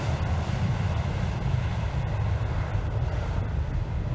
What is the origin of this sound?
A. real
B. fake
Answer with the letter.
A